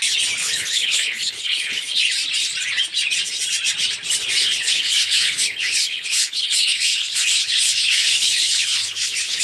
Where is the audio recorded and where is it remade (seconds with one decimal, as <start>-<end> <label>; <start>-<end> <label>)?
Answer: 0.0-0.4 recorded; 0.4-2.0 remade; 2.0-4.4 recorded; 4.4-9.4 remade